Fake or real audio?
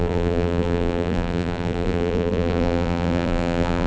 fake